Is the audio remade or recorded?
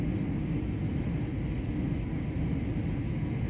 recorded